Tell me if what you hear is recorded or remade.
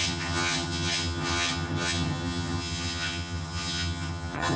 remade